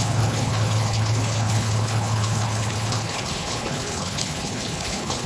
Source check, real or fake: fake